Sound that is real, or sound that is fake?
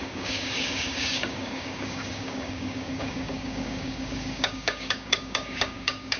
fake